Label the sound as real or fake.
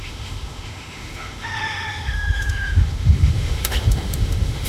fake